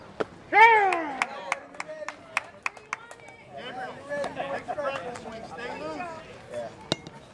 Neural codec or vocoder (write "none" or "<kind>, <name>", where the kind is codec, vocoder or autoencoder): none